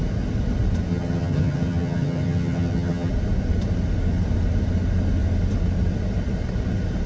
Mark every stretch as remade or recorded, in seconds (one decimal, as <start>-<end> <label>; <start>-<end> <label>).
0.0-0.9 recorded; 0.9-3.1 remade; 3.1-7.1 recorded